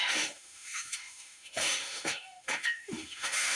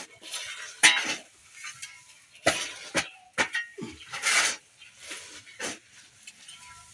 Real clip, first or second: second